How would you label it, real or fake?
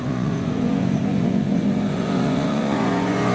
fake